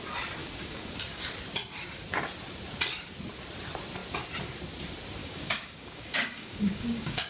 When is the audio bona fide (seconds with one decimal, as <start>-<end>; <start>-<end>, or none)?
0.0-0.4; 1.2-5.2